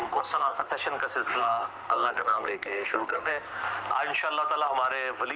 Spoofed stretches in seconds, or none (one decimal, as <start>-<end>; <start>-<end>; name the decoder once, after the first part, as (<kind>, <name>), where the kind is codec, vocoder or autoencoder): 0.0-0.7 (codec, SNAC); 1.4-3.7